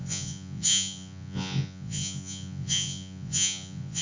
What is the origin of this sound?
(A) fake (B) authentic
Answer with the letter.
A